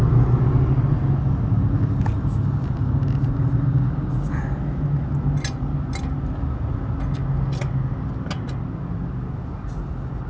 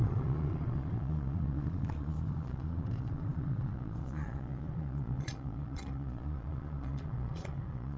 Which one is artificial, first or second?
second